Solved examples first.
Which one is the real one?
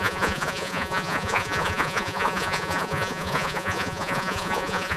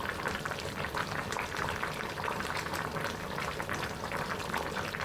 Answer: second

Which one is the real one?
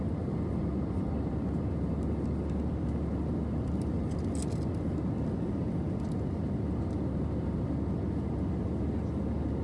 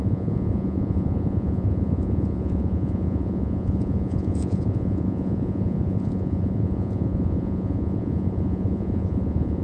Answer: first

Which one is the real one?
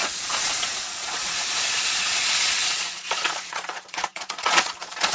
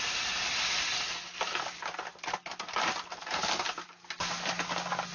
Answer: second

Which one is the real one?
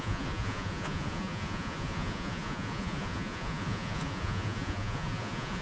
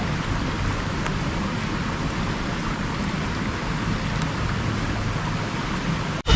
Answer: second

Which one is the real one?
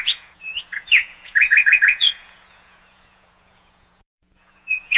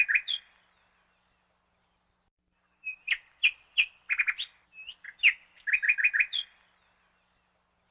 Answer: second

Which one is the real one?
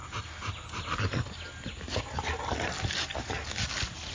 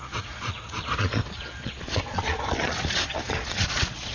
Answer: first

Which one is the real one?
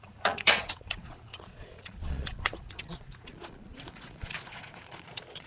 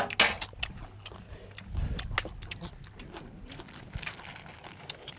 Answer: second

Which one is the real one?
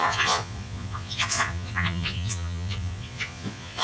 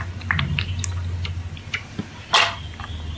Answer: second